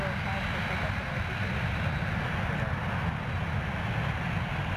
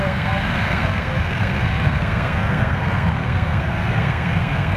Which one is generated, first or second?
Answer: second